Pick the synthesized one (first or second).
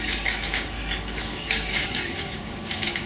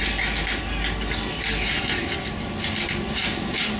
first